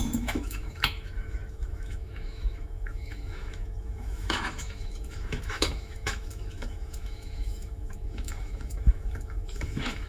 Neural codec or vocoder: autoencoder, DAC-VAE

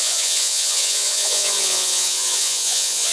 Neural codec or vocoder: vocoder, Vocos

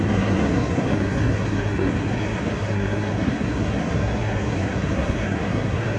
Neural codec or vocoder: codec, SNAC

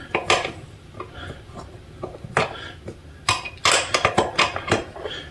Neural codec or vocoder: none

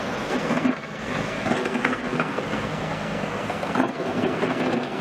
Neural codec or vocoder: codec, SNAC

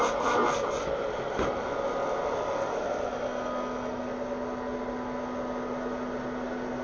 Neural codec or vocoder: none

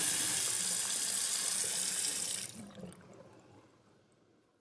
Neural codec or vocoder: none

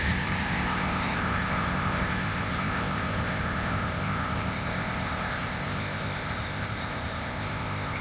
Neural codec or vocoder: codec, ZipCodec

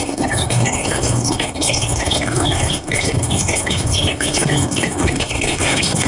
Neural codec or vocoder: codec, SNAC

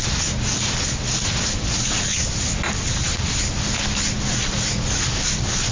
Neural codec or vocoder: none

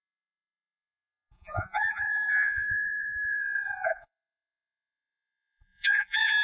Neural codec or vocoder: vocoder, Vocos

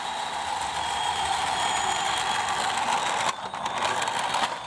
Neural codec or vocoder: none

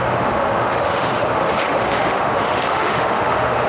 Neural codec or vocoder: autoencoder, DAC-VAE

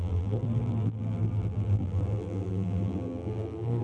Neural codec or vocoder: vocoder, BigVGAN v2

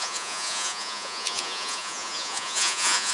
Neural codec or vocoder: vocoder, Vocos